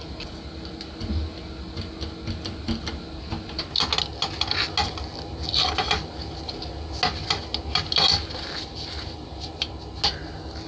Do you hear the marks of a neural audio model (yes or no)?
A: no